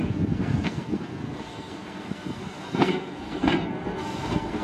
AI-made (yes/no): yes